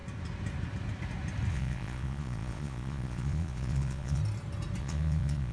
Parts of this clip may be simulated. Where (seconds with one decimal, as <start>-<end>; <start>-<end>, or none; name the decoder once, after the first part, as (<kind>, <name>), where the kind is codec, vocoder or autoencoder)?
1.5-4.2 (vocoder, Vocos); 4.8-5.5